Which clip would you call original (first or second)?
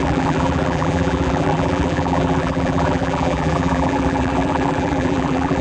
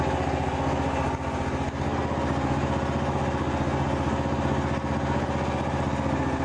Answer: second